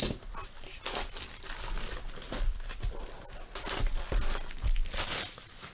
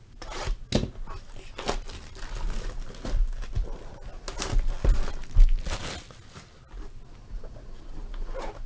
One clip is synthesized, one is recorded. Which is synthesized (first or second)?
first